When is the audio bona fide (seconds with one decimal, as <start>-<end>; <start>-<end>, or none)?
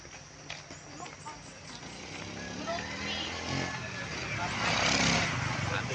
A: 0.0-5.9